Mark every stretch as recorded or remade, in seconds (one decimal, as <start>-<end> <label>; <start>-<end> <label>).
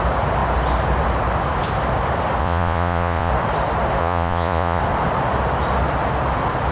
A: 0.0-2.4 recorded; 2.4-3.3 remade; 3.3-4.0 recorded; 4.0-4.8 remade; 4.8-6.7 recorded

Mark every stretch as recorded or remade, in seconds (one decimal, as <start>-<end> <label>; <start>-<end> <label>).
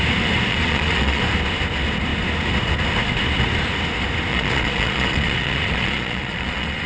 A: 0.0-0.5 recorded; 0.5-1.2 remade; 1.2-4.3 recorded; 4.3-6.9 remade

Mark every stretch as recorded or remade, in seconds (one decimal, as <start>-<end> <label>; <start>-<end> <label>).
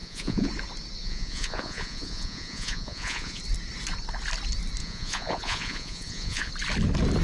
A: 0.0-0.5 remade; 0.5-1.0 recorded; 1.0-3.4 remade; 3.4-4.8 recorded; 4.8-6.5 remade; 6.5-7.2 recorded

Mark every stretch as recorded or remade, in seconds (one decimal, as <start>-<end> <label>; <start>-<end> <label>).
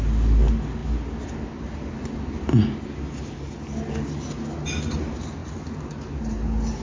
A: 0.0-6.8 recorded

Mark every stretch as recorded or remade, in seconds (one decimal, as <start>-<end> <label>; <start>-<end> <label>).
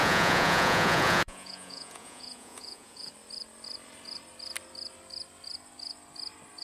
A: 0.0-3.1 remade; 3.1-6.6 recorded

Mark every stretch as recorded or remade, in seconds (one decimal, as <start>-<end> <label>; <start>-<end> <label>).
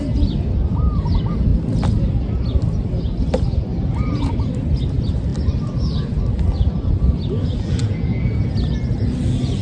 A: 0.0-7.8 recorded; 7.8-8.4 remade; 8.4-9.6 recorded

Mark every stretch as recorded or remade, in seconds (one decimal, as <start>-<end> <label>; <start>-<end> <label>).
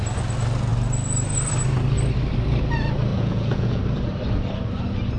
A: 0.0-3.1 recorded; 3.1-3.8 remade; 3.8-5.2 recorded